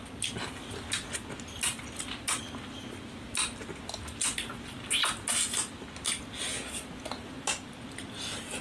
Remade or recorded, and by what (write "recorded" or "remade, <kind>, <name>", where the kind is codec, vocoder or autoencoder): recorded